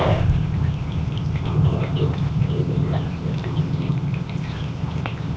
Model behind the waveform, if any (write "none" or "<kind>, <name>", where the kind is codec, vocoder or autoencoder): codec, ZipCodec